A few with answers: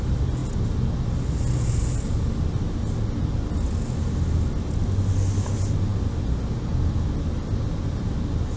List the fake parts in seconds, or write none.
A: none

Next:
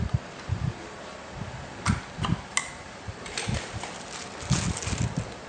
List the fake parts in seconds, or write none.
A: none

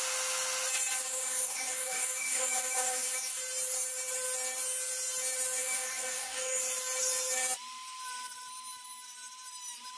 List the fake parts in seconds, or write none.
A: 1.0-3.4 (codec, DAC); 5.6-6.6

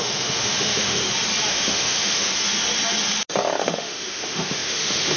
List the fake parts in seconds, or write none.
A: 0.0-1.0 (autoencoder, DAC-VAE); 1.5-2.3; 3.6-5.2

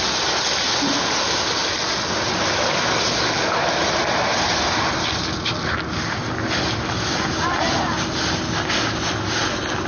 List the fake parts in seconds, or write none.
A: none